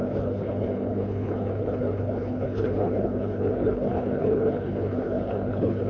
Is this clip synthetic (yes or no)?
yes